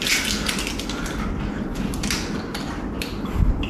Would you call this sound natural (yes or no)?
yes